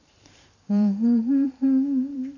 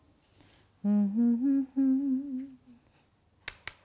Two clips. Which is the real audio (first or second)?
second